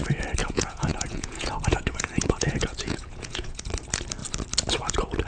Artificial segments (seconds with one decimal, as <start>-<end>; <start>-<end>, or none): 0.4-3.6